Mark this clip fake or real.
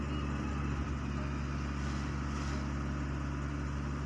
real